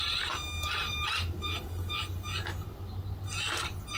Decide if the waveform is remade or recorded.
recorded